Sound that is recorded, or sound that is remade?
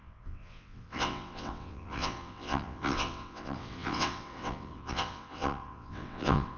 remade